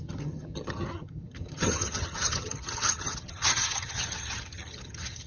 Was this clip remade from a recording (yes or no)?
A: yes